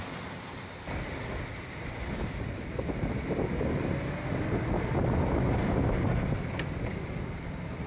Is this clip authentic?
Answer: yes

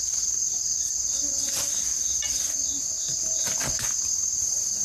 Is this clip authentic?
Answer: yes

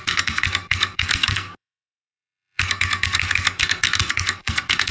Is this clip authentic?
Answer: no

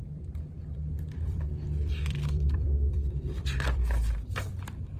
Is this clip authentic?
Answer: no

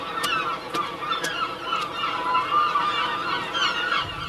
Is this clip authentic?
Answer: yes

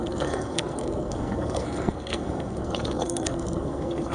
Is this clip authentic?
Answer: no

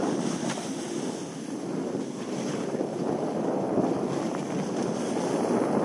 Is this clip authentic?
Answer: yes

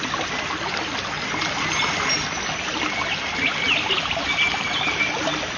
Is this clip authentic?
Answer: yes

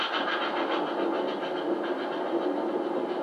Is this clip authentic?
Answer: yes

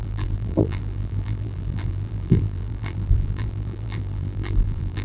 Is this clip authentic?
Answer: no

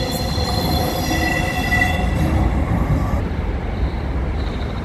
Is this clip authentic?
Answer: yes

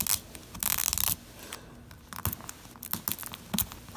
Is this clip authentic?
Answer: yes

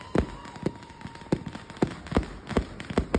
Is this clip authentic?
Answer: yes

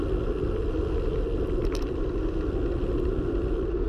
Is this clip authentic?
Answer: yes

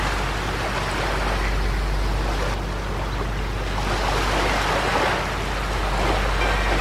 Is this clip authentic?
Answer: yes